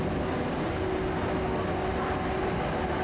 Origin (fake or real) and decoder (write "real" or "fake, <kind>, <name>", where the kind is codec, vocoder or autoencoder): real